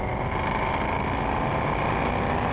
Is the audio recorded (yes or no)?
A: yes